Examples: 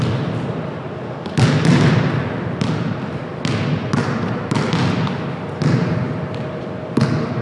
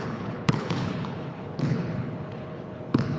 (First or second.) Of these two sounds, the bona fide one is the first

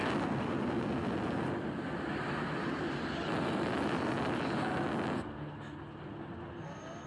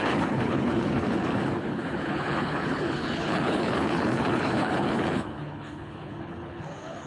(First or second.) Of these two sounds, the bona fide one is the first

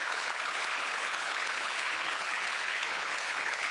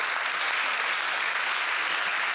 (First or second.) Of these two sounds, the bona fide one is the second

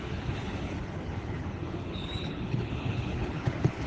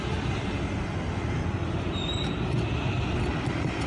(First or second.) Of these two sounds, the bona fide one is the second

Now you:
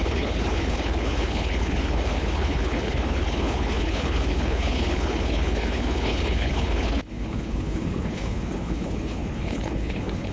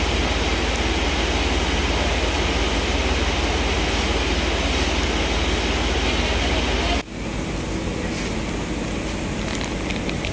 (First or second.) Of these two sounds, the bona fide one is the second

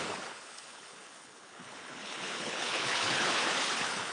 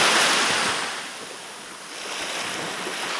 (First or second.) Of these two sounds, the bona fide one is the second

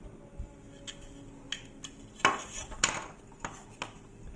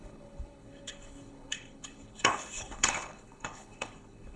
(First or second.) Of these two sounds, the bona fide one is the first